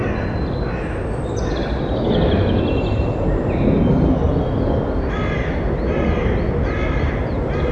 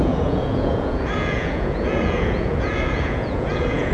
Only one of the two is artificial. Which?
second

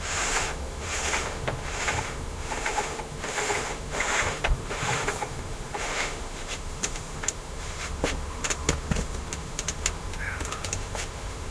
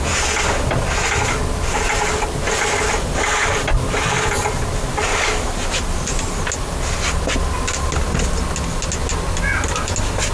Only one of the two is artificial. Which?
first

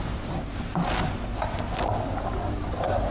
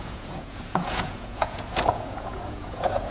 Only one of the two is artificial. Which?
second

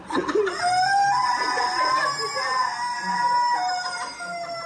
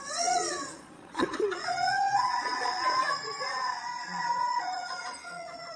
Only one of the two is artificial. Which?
second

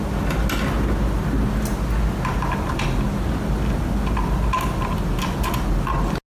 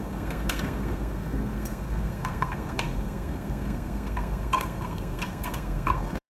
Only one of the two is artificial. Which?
second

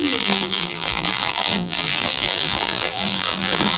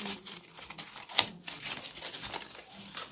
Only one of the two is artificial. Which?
first